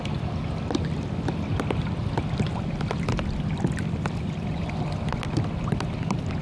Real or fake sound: real